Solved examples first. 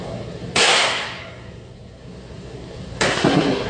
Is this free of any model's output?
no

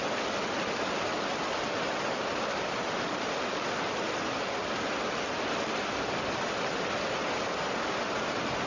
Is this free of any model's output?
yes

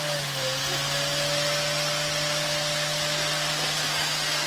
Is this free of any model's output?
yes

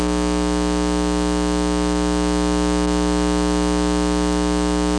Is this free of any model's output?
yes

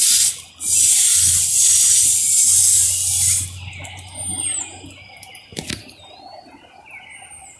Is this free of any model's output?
yes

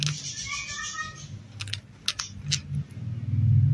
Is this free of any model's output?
yes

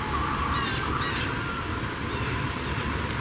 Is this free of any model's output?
yes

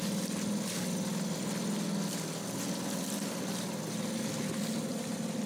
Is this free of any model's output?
yes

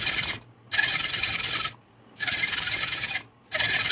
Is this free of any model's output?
yes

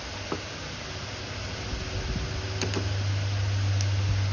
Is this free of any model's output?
yes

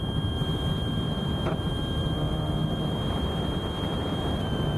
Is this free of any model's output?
no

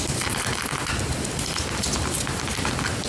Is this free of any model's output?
yes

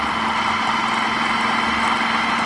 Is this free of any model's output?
yes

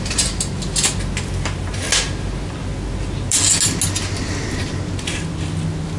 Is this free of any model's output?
yes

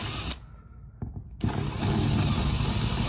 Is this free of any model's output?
yes